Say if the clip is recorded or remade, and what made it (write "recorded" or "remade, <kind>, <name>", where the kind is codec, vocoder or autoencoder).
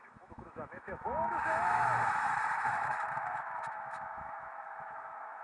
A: remade, autoencoder, DAC-VAE